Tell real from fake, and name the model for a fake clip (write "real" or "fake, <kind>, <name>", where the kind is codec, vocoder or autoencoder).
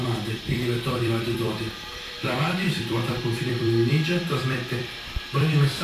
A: fake, vocoder, BigVGAN v2